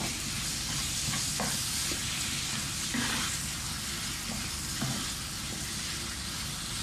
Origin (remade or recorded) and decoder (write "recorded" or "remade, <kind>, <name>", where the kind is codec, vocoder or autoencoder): recorded